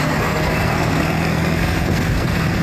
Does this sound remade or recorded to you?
remade